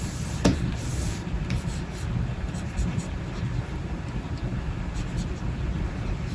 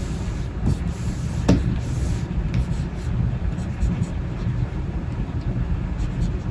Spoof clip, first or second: first